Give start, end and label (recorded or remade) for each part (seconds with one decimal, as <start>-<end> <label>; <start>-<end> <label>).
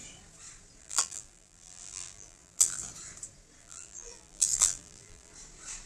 0.0-0.8 recorded; 0.8-2.9 remade; 2.9-3.6 recorded; 3.6-5.3 remade; 5.3-5.9 recorded